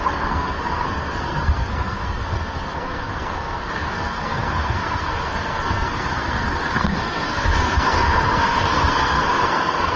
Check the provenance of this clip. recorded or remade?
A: remade